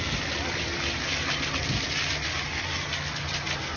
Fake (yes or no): no